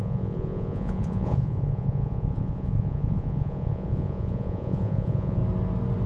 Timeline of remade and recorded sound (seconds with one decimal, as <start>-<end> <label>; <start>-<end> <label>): 0.0-5.4 remade; 5.4-6.1 recorded